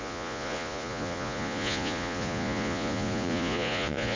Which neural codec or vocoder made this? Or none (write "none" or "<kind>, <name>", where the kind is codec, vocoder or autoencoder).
vocoder, Vocos